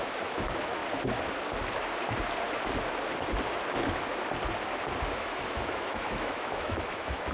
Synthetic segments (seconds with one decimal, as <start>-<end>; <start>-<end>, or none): 0.0-0.8; 5.2-7.3